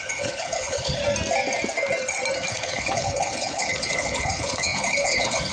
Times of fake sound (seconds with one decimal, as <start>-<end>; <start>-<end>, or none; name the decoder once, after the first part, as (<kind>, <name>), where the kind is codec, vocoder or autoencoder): 0.0-1.0 (codec, HILCodec); 2.5-5.5